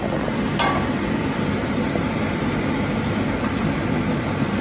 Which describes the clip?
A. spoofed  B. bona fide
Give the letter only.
B